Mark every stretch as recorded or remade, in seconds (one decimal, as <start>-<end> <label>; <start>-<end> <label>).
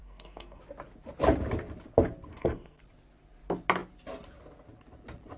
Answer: 0.0-0.6 remade; 0.6-2.3 recorded; 2.3-2.8 remade; 2.8-5.4 recorded